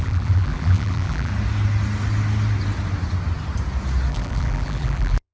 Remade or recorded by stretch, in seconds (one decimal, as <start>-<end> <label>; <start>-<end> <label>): 0.0-1.3 remade; 1.3-4.1 recorded; 4.1-5.3 remade